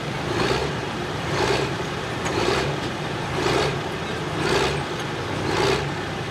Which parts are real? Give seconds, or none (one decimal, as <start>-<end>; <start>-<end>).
0.0-0.6; 4.1-6.3